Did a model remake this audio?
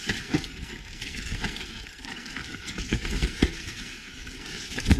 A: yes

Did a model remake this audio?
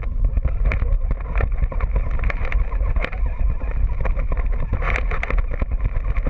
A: no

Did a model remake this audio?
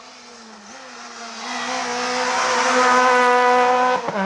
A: no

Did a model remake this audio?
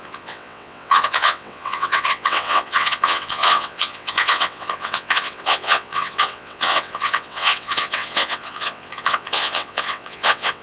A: yes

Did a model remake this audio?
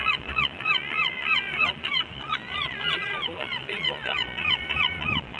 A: yes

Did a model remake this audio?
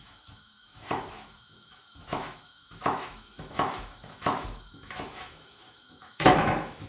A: yes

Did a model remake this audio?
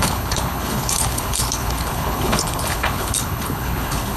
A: yes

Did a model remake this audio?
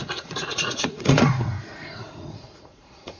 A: yes